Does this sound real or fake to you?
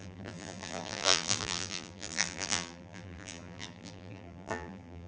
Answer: fake